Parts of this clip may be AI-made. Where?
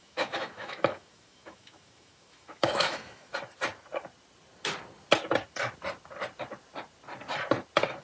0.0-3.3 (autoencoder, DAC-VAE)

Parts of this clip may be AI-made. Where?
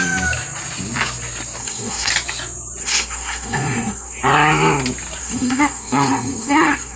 1.6-2.1 (codec, SNAC); 2.8-4.2; 5.2-7.0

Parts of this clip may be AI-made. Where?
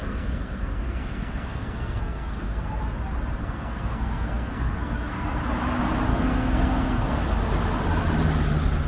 0.0-2.8 (codec, SNAC); 3.4-5.4; 6.1-7.2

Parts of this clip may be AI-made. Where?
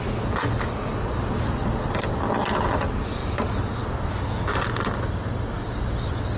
none